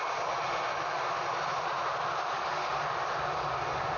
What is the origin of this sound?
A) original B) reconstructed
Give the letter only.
A